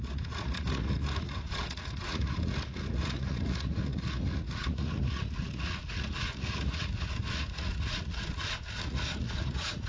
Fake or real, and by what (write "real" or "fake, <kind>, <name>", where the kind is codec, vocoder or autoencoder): fake, vocoder, Vocos